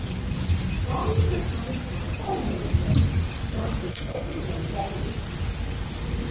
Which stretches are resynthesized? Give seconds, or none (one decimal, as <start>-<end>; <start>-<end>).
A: 3.9-4.4